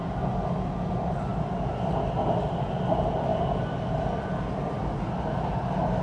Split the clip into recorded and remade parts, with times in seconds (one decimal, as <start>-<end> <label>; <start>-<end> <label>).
0.0-6.0 recorded